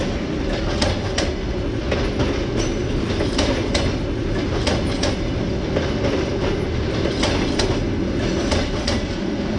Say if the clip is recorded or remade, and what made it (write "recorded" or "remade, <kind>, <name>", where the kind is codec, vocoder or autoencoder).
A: recorded